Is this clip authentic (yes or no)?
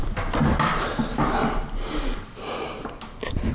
yes